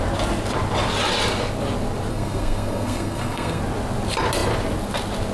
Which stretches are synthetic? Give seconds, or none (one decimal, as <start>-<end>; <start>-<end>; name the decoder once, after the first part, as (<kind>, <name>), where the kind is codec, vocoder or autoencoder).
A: 2.1-3.6 (codec, SNAC)